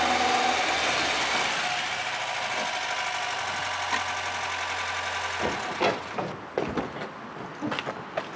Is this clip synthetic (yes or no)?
no